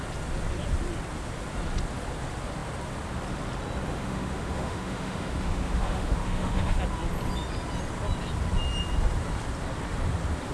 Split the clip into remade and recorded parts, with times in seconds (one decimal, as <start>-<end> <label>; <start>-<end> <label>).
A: 0.0-3.9 recorded; 3.9-6.8 remade; 6.8-10.5 recorded